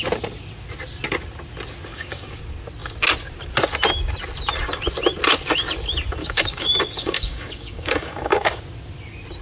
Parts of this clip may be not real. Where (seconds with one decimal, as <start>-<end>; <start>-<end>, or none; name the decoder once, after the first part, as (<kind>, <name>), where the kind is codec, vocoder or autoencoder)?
1.9-2.4 (codec, DAC); 6.2-8.6